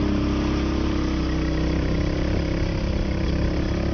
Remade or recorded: recorded